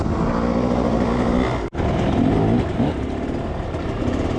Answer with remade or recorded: recorded